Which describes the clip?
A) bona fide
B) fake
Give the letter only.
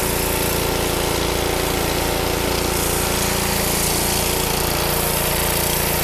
A